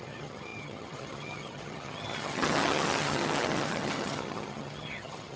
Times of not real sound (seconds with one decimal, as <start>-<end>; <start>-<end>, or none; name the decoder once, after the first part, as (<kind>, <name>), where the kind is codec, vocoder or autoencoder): 0.0-5.4 (vocoder, HiFi-GAN)

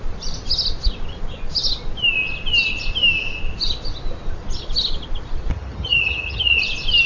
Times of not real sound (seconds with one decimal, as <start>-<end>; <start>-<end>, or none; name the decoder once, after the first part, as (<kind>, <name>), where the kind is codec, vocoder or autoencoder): 5.5-6.6 (vocoder, HiFi-GAN)